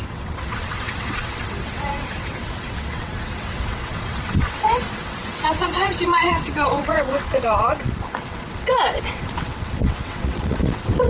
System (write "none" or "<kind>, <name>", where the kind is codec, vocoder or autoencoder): vocoder, WaveNeXt